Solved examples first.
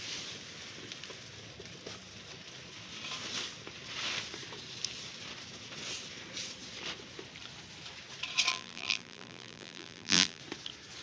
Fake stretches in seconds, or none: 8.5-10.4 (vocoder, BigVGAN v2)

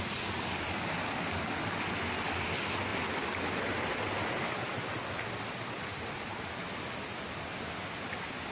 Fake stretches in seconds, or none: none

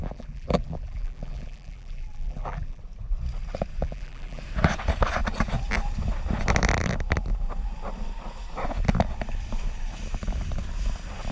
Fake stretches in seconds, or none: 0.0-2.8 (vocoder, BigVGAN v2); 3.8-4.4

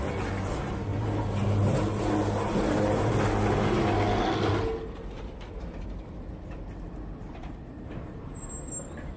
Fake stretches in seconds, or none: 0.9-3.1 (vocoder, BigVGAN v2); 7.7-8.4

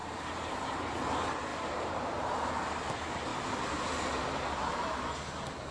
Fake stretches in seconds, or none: 0.0-0.8 (vocoder, BigVGAN v2); 1.5-2.5